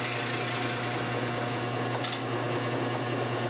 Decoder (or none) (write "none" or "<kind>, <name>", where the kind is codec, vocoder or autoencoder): none